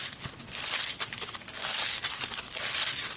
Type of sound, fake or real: real